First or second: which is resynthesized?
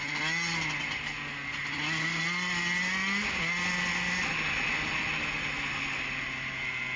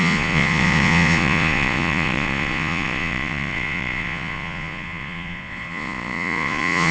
second